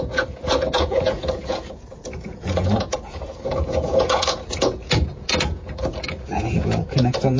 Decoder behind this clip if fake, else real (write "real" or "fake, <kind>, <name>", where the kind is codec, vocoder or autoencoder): fake, vocoder, Vocos